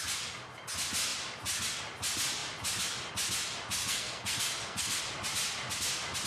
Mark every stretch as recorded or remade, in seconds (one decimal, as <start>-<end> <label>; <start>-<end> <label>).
0.0-3.8 recorded; 3.8-5.0 remade; 5.0-6.3 recorded